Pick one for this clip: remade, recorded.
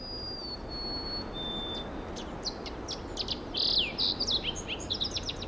recorded